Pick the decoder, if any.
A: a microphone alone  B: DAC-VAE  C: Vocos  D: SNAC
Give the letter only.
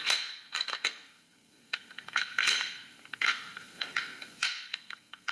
D